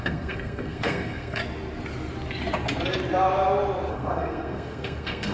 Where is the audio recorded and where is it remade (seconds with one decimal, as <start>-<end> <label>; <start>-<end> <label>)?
0.0-1.4 remade; 1.4-3.9 recorded; 3.9-5.3 remade